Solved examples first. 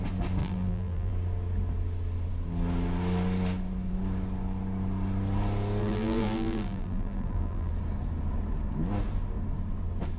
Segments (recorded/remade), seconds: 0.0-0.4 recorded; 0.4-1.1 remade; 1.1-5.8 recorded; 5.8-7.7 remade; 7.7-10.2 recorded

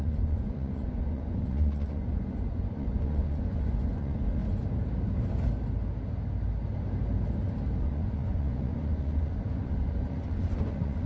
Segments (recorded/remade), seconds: 0.0-4.4 remade; 4.4-7.8 recorded; 7.8-11.1 remade